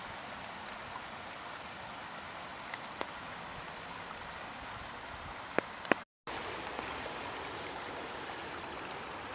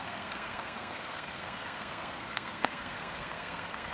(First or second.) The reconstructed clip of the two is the second